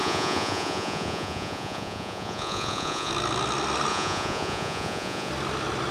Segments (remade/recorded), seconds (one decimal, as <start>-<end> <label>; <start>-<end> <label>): 0.0-3.1 remade; 3.1-3.9 recorded; 3.9-5.3 remade; 5.3-5.9 recorded